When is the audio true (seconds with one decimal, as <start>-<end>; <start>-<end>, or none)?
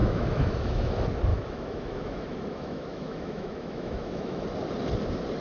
0.9-1.3; 4.4-5.4